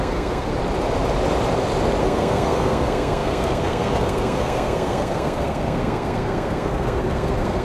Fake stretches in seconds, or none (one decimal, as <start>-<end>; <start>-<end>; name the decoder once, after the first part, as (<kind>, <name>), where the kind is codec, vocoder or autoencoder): 0.0-0.5 (codec, SNAC); 2.0-7.6